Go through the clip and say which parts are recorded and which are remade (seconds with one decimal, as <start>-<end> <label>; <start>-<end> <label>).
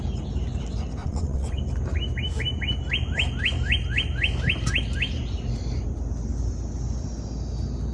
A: 0.0-1.0 recorded; 1.0-1.6 remade; 1.6-7.9 recorded